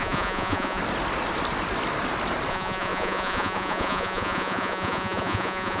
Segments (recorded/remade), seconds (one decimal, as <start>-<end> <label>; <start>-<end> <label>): 0.0-0.8 remade; 0.8-2.5 recorded; 2.5-5.8 remade